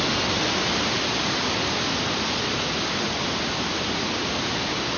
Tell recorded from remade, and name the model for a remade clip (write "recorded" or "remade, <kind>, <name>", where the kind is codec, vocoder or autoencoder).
recorded